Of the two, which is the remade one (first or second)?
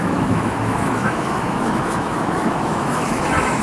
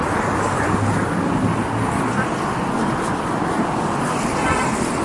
first